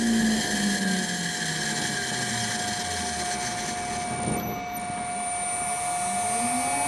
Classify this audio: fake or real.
real